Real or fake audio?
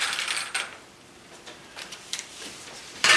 fake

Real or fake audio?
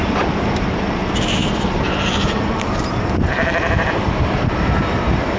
fake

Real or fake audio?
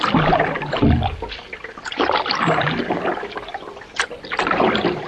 real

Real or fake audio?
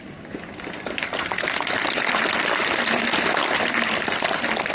fake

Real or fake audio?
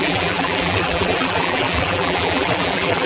fake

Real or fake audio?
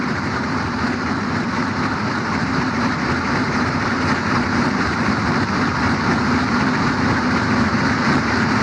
fake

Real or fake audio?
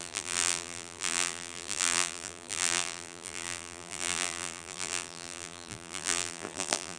fake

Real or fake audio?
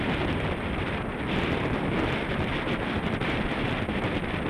real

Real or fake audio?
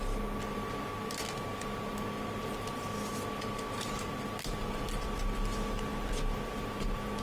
real